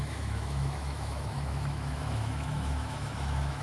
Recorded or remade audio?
remade